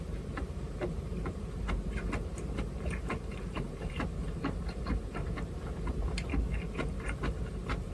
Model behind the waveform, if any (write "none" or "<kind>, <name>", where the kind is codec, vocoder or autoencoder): vocoder, BigVGAN v2